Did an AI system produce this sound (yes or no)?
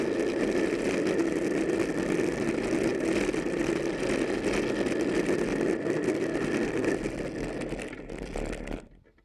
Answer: no